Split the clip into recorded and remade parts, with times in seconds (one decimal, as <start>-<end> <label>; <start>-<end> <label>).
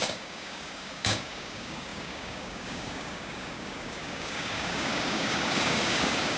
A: 0.0-6.4 remade